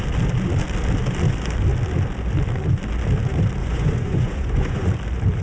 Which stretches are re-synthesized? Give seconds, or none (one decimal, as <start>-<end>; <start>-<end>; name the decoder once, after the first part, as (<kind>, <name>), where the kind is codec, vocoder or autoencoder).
3.6-4.9 (vocoder, Vocos)